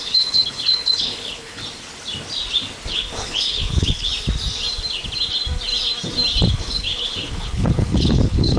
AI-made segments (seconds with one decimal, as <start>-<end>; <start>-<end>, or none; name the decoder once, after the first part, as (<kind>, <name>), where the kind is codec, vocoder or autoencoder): 0.0-1.6 (codec, HILCodec); 2.9-4.1; 6.5-8.6